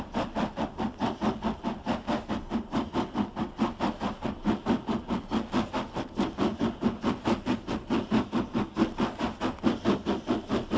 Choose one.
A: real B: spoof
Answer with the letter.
A